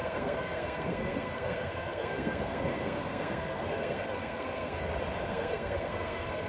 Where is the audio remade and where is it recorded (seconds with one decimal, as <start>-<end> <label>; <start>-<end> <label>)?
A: 0.0-4.8 remade; 4.8-5.3 recorded; 5.3-6.5 remade